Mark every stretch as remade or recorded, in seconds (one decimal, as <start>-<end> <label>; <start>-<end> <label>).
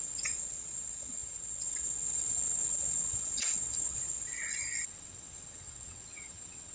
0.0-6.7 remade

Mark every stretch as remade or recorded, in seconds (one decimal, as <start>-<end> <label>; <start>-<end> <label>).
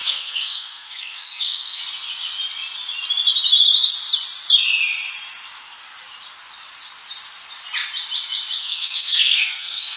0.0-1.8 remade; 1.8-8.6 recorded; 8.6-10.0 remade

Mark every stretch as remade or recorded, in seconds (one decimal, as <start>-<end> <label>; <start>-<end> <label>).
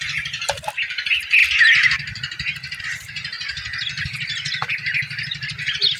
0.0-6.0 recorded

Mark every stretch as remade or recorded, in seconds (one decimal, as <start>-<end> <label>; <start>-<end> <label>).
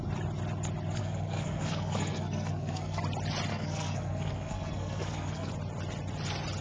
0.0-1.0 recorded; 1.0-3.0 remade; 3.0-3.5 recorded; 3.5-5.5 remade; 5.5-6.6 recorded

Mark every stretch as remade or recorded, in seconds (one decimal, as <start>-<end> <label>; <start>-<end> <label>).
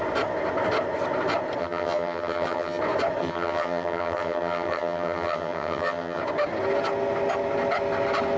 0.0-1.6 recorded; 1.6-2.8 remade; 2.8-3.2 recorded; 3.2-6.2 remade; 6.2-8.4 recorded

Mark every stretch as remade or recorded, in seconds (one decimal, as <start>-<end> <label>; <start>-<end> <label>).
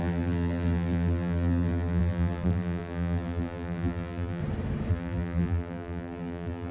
0.0-4.4 remade; 4.4-4.9 recorded; 4.9-6.7 remade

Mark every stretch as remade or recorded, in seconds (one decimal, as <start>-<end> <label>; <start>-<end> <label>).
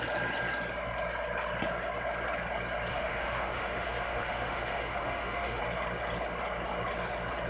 0.0-2.9 recorded; 2.9-5.6 remade; 5.6-7.5 recorded